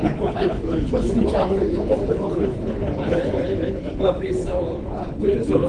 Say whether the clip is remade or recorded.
remade